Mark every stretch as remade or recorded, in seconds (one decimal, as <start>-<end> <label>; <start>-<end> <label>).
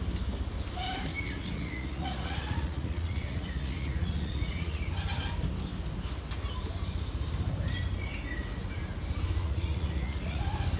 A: 0.0-1.1 recorded; 1.1-4.9 remade; 4.9-9.4 recorded; 9.4-10.4 remade; 10.4-10.8 recorded